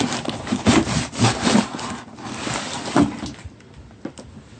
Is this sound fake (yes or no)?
no